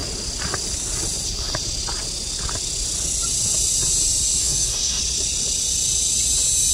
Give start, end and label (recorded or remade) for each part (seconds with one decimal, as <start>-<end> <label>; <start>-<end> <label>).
0.0-4.4 recorded; 4.4-5.0 remade; 5.0-6.7 recorded